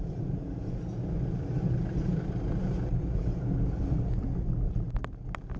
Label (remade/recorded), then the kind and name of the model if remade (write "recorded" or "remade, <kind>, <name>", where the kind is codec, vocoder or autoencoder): recorded